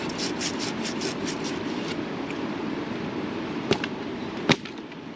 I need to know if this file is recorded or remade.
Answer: remade